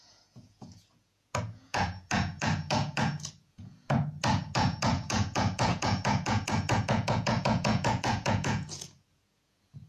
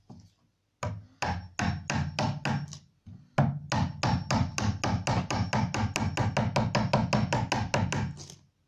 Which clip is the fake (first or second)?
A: first